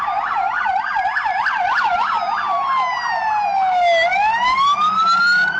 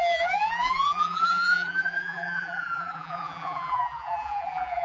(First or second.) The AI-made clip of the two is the second